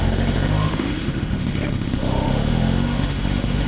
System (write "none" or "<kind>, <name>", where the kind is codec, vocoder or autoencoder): autoencoder, DAC-VAE